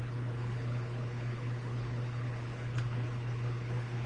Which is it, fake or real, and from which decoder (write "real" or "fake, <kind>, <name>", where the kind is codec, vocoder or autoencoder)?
fake, codec, HILCodec